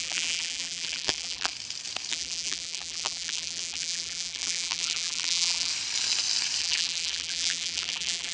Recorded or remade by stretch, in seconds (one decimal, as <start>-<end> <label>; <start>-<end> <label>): 0.0-1.5 remade; 1.5-2.1 recorded; 2.1-5.7 remade; 5.7-6.6 recorded; 6.6-8.3 remade